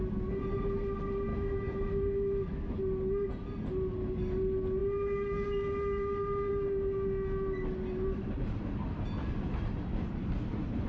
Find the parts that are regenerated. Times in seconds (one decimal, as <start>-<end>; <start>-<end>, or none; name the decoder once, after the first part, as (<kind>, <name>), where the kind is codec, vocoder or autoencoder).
1.3-2.8 (autoencoder, DAC-VAE)

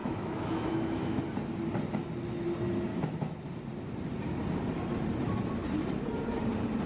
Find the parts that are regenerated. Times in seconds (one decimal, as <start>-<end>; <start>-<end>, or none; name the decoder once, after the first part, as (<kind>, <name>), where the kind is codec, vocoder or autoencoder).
0.0-1.2 (autoencoder, DAC-VAE); 2.9-3.4